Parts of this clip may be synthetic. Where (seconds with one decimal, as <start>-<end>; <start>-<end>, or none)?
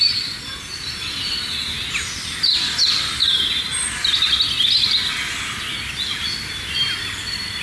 none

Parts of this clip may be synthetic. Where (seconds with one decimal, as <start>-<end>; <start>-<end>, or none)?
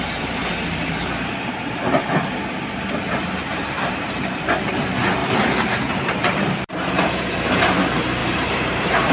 5.2-7.1; 8.2-9.1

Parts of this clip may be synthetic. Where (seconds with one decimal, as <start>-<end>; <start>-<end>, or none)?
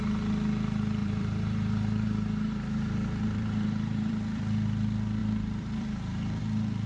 1.0-4.4; 5.2-6.4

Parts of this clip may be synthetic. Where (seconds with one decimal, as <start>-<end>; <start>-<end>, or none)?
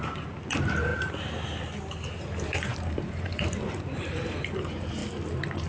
0.0-0.9; 2.2-5.0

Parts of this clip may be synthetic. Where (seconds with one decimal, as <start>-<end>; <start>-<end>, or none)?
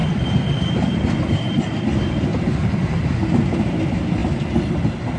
2.3-3.8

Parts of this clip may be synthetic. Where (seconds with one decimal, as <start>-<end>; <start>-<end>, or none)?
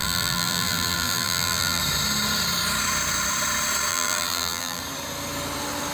0.0-1.8; 3.9-4.8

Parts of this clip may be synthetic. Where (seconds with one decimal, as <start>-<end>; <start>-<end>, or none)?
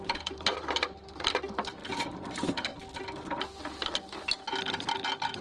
0.0-2.7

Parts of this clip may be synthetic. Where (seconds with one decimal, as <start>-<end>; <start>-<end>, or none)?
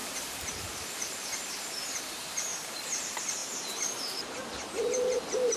0.0-5.6